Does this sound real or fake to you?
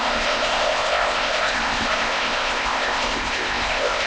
fake